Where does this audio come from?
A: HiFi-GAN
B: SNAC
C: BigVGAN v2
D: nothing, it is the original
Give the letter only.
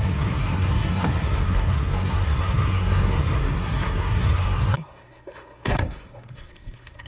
B